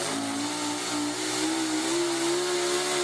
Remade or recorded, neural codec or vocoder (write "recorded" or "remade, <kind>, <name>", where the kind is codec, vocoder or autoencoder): recorded